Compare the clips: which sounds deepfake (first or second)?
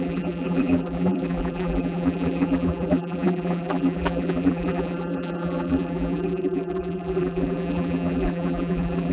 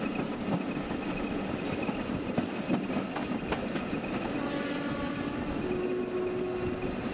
first